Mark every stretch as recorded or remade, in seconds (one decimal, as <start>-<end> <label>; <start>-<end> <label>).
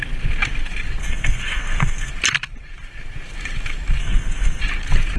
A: 0.0-1.0 recorded; 1.0-2.1 remade; 2.1-4.0 recorded; 4.0-4.6 remade; 4.6-5.2 recorded